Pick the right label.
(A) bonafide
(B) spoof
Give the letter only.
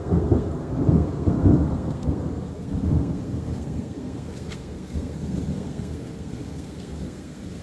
B